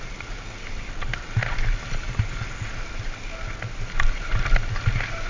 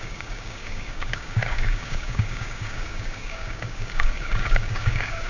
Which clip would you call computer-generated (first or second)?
second